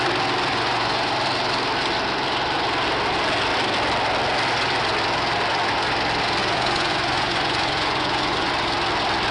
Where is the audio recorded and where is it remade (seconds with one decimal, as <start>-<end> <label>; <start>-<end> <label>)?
0.0-0.5 recorded; 0.5-1.1 remade; 1.1-6.4 recorded; 6.4-8.5 remade; 8.5-9.3 recorded